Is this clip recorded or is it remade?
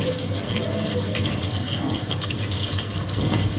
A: remade